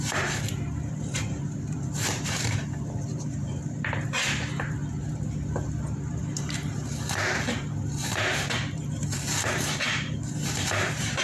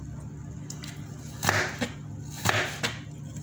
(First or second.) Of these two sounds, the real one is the second